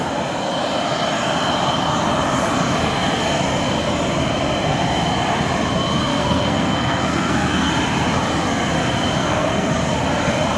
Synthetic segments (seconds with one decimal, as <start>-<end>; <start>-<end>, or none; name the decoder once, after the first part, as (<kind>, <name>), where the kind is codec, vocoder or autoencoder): 6.1-7.7 (codec, SNAC); 9.2-9.7